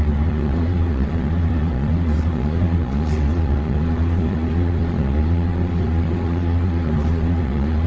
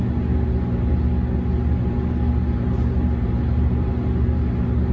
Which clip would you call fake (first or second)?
first